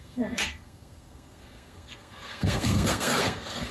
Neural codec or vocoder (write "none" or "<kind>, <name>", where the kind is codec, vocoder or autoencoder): codec, SNAC